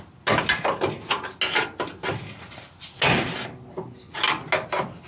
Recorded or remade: recorded